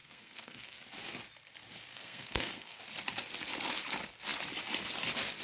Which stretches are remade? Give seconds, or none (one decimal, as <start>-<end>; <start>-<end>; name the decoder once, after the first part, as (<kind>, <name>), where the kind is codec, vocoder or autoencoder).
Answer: 0.0-0.8 (codec, SNAC); 1.9-2.8